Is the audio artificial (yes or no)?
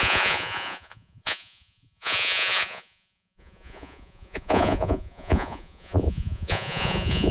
yes